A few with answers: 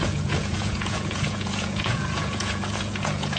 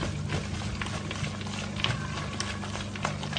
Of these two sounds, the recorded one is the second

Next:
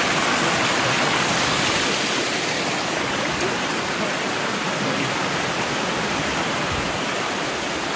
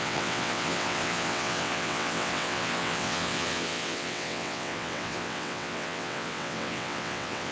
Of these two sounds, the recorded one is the first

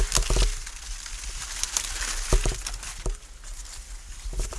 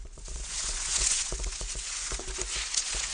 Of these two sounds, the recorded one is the first